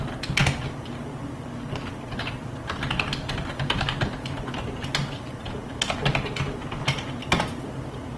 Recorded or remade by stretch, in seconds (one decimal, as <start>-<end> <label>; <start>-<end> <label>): 0.0-8.2 recorded